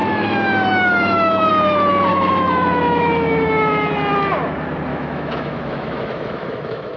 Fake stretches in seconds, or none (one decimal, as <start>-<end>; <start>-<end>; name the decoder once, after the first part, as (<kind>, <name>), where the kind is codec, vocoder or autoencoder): 0.0-1.5 (autoencoder, DAC-VAE); 2.1-3.9; 4.9-7.0